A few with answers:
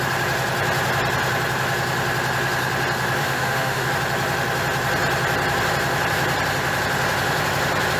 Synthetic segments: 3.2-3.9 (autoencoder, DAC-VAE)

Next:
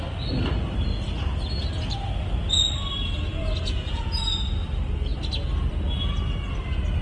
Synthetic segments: 3.3-4.3 (vocoder, Vocos)

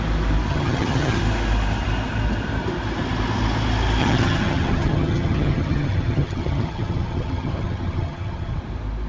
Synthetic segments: 0.5-1.2 (vocoder, HiFi-GAN); 4.0-8.6

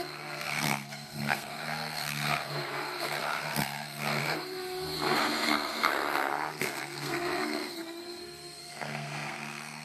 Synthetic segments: 0.0-9.8 (codec, SNAC)

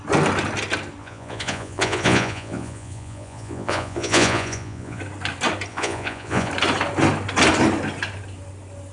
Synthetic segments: 1.0-5.0 (vocoder, Vocos); 5.7-6.5

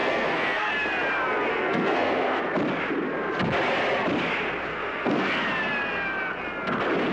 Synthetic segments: 0.0-0.7 (codec, SNAC); 1.5-2.4; 4.7-5.4

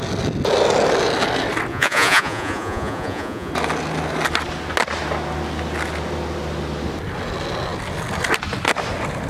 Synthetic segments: 1.7-3.5 (vocoder, Vocos)

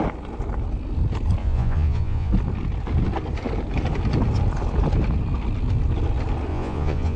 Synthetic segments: 1.4-2.3 (vocoder, Vocos); 6.5-7.2